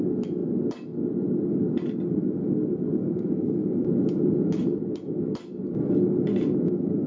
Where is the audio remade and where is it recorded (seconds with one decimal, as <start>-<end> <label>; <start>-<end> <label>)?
0.0-7.1 recorded